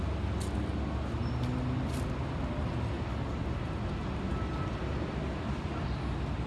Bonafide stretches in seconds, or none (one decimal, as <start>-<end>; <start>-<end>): 0.0-6.5